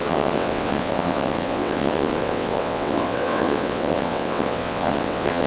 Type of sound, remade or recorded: remade